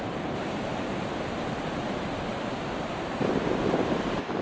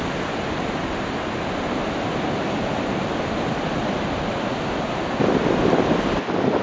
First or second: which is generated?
first